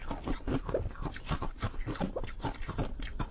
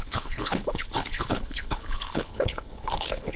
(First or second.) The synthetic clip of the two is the second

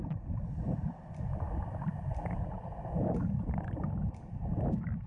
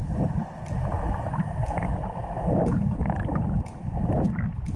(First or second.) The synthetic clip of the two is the first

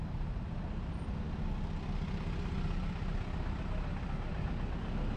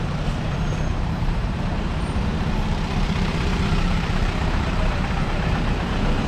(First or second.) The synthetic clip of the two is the second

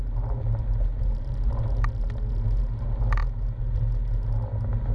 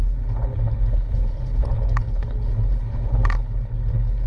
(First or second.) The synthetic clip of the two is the second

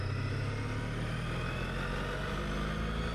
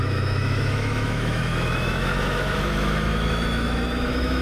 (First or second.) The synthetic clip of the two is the second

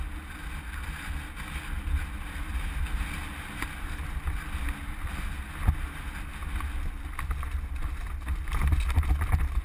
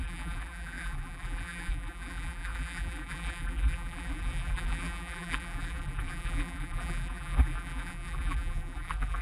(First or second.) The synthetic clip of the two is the second